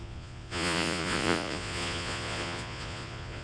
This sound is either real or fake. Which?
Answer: fake